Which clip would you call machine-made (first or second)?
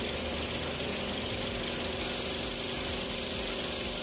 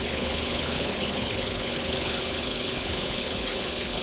second